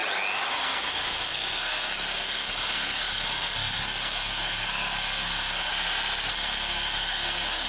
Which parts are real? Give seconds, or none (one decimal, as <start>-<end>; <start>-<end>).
0.0-0.5; 5.7-6.3